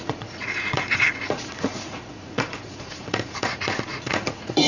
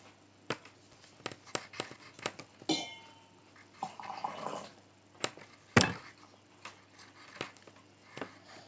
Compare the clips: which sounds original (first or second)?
second